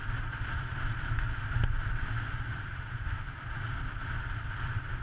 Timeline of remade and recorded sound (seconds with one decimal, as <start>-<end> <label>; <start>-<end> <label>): 0.0-5.0 recorded